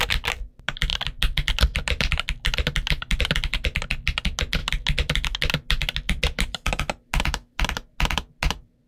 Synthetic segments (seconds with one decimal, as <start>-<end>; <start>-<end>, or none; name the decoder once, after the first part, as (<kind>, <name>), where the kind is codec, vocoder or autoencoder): none